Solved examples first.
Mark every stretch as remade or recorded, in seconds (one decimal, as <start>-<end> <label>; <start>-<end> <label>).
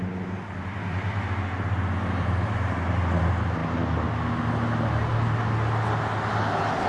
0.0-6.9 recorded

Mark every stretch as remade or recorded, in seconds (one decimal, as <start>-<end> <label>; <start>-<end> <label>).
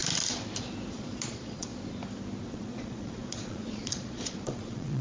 0.0-0.9 recorded; 0.9-1.7 remade; 1.7-2.5 recorded; 2.5-5.0 remade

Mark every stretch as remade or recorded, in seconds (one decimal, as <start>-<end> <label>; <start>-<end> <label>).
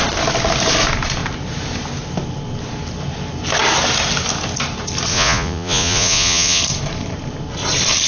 0.0-5.1 recorded; 5.1-6.6 remade; 6.6-8.1 recorded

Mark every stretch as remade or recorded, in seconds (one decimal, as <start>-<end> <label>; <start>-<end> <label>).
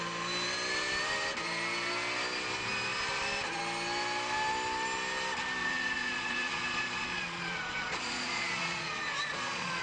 0.0-5.6 recorded; 5.6-9.8 remade